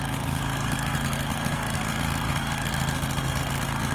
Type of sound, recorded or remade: remade